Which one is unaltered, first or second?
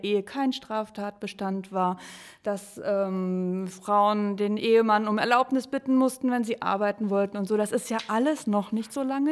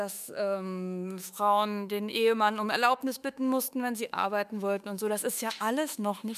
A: first